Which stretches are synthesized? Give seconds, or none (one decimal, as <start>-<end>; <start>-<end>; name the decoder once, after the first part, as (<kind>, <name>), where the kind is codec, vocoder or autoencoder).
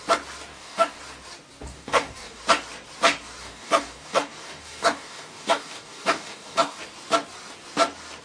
0.5-1.0 (codec, DAC); 1.7-2.4; 3.4-6.8